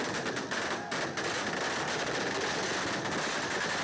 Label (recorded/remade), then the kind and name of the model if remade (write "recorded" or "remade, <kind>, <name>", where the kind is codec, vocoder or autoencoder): recorded